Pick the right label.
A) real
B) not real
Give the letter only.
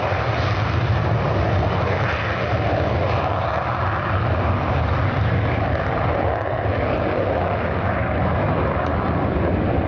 A